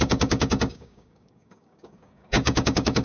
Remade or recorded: remade